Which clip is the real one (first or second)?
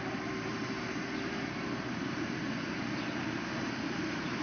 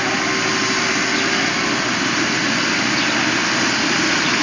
second